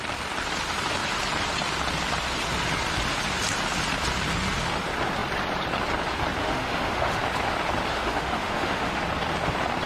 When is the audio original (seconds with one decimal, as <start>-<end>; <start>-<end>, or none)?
0.0-6.4; 7.2-7.9; 9.0-9.9